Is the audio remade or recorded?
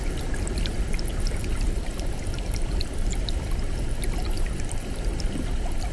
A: remade